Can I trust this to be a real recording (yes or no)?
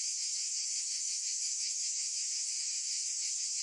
no